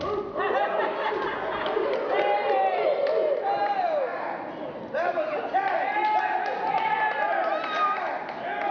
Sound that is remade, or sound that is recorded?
recorded